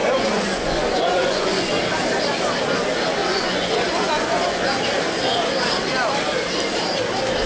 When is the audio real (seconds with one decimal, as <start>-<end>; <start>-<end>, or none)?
1.8-3.2; 4.7-7.5